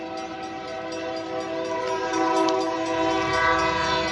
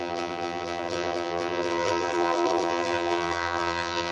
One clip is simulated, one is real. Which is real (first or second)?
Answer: first